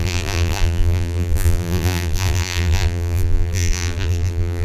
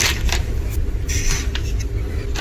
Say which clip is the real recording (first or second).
second